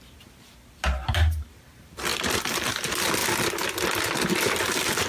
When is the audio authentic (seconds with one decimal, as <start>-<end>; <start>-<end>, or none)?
0.0-5.1